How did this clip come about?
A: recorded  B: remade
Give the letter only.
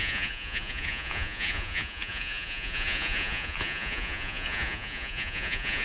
B